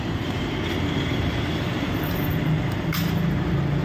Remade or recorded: remade